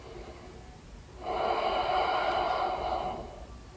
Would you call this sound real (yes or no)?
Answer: yes